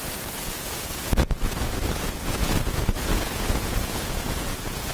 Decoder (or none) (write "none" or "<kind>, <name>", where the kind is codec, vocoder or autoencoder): vocoder, Vocos